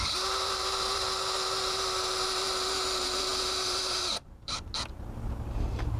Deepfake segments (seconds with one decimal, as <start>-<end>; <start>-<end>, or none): 0.0-4.7; 5.5-6.0